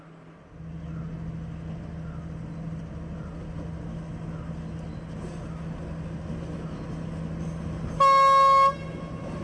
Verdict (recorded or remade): recorded